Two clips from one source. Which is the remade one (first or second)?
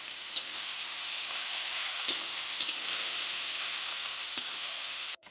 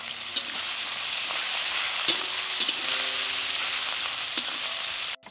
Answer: first